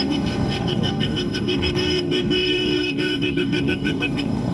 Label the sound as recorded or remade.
remade